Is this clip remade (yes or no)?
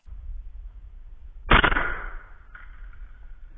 no